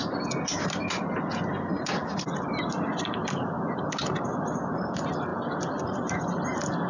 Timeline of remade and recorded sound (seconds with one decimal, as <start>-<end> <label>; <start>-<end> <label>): 0.0-6.9 recorded